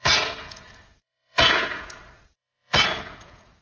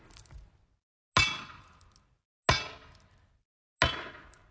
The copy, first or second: first